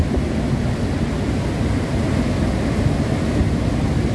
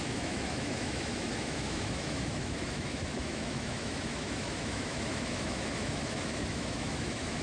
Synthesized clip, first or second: second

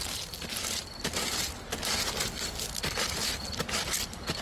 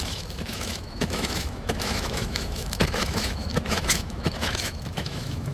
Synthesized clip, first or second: second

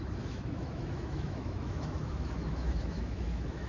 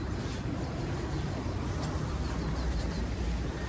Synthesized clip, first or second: first